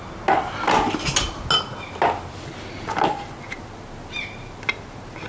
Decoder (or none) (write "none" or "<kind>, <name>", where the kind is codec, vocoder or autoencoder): none